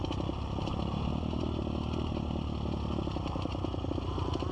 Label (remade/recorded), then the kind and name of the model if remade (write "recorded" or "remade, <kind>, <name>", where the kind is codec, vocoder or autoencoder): recorded